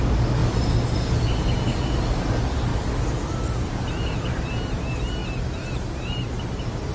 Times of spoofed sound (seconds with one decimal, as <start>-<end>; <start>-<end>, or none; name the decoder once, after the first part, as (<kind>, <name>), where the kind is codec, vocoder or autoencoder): 0.4-0.9 (vocoder, BigVGAN v2); 2.7-3.7

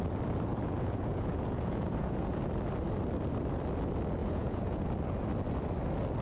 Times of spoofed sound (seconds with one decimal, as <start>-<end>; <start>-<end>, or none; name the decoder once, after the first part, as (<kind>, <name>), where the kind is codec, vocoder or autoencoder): 0.5-2.5 (vocoder, Vocos); 4.2-4.9